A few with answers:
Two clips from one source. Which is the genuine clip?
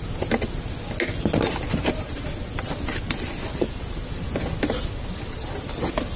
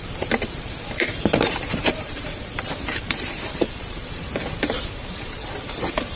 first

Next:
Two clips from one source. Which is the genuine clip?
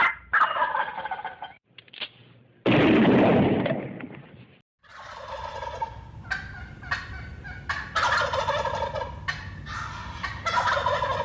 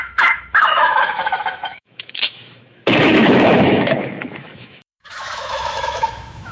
first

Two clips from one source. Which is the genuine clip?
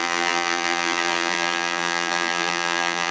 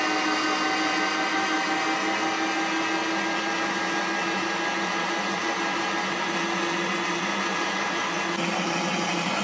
second